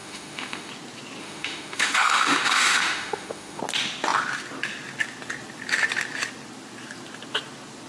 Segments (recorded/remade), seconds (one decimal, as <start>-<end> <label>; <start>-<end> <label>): 0.0-0.7 remade; 0.7-1.2 recorded; 1.2-3.6 remade; 3.6-7.9 recorded